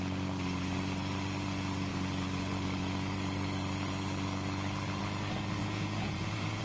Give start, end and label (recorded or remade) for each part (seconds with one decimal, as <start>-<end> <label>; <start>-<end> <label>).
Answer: 0.0-5.6 recorded; 5.6-6.6 remade